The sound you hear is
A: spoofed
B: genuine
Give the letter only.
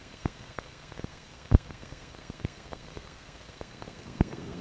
A